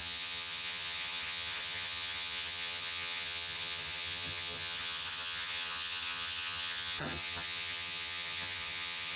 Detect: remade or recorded remade